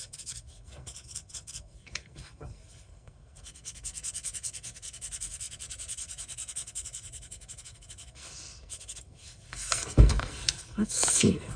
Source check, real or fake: fake